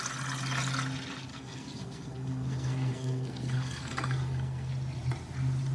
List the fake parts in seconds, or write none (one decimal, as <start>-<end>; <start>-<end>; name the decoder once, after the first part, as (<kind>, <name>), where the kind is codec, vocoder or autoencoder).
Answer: 1.3-4.7 (codec, SNAC)